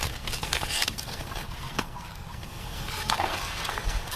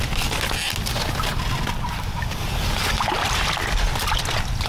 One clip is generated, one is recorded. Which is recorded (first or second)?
second